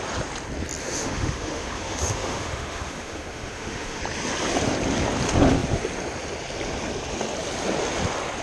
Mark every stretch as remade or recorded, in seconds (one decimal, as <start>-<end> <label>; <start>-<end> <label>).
0.0-0.8 recorded; 0.8-4.0 remade; 4.0-8.4 recorded